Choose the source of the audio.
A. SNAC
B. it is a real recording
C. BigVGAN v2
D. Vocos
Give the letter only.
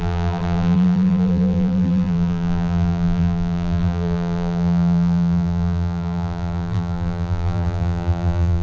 C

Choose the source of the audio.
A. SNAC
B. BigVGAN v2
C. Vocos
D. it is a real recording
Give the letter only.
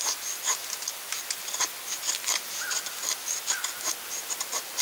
D